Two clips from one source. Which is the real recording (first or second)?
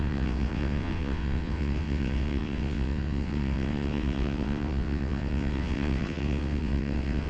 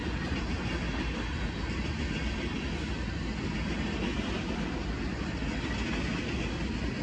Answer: second